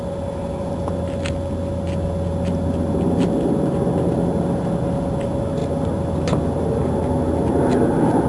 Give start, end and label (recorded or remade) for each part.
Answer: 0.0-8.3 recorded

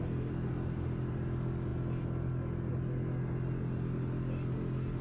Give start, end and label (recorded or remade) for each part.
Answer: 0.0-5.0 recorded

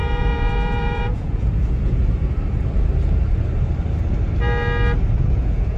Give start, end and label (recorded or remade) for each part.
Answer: 0.0-2.0 remade; 2.0-5.2 recorded; 5.2-5.8 remade

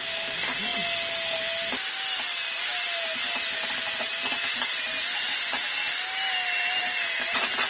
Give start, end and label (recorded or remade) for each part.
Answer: 0.0-7.7 recorded

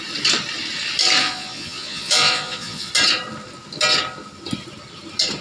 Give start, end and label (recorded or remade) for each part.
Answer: 0.0-1.2 recorded; 1.2-2.9 remade; 2.9-5.4 recorded